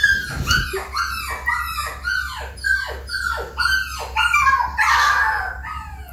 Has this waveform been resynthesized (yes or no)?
no